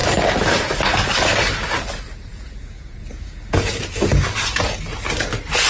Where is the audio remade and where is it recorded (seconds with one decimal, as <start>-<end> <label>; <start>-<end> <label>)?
0.0-2.3 recorded; 2.3-3.8 remade; 3.8-5.7 recorded